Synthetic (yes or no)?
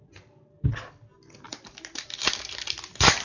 no